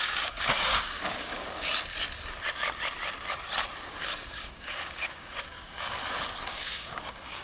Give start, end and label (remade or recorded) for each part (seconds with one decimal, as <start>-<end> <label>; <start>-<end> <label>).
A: 0.0-1.7 remade; 1.7-3.9 recorded; 3.9-6.0 remade; 6.0-6.5 recorded; 6.5-7.4 remade